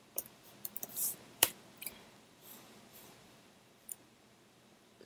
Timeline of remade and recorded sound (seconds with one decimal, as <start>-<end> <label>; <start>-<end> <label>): 0.0-5.1 remade